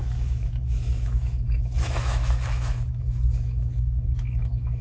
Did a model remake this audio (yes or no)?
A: yes